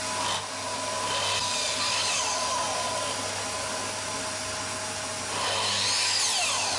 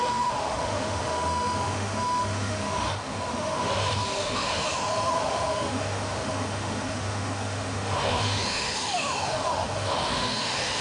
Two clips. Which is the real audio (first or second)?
first